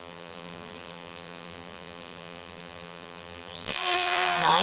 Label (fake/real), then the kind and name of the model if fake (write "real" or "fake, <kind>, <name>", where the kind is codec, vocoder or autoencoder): fake, vocoder, BigVGAN v2